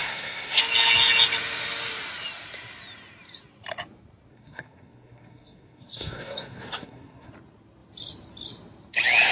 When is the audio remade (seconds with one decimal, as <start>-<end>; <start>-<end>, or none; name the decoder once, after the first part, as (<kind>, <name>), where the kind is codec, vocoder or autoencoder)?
0.0-0.6 (codec, SNAC); 4.3-7.3